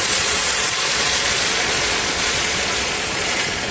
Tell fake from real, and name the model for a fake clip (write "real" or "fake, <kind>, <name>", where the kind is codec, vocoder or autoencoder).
fake, vocoder, Vocos